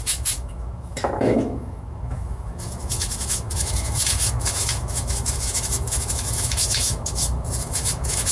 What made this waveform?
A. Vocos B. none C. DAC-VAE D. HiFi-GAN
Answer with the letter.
C